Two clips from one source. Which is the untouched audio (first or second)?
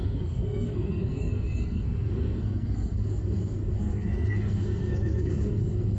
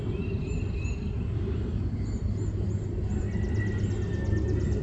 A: second